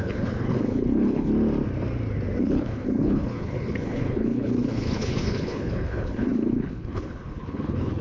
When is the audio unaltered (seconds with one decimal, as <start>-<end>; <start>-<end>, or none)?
1.3-2.4